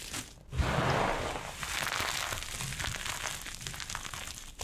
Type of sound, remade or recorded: recorded